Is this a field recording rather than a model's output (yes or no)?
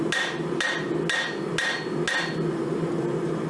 yes